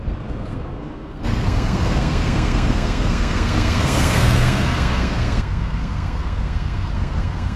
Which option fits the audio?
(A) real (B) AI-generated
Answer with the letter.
B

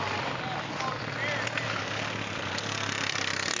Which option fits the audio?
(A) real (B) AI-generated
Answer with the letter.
A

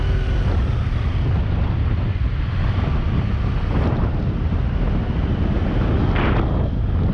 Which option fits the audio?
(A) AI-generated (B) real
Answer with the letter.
B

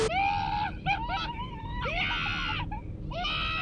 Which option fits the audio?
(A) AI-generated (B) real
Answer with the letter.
B